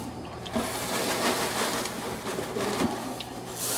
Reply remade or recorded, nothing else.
recorded